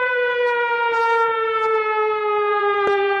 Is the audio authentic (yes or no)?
no